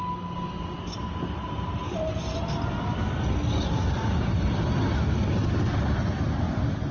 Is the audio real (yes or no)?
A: yes